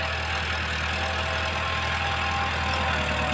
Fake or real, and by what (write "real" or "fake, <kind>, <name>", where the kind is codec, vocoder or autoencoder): real